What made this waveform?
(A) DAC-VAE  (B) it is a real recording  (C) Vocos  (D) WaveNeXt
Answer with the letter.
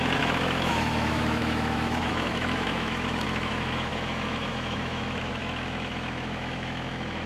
A